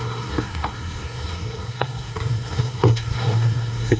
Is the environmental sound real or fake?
fake